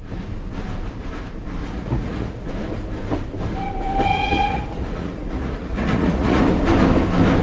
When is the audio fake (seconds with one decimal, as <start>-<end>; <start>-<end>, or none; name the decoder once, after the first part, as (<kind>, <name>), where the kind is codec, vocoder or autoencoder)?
1.6-2.5 (vocoder, Vocos); 4.1-6.4